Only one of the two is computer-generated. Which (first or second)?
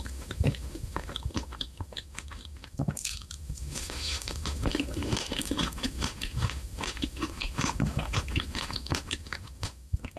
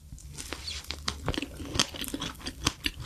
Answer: first